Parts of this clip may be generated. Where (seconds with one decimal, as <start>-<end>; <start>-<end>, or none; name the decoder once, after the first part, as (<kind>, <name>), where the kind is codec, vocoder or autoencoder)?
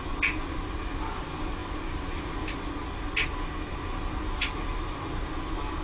none